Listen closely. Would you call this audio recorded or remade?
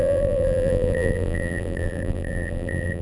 remade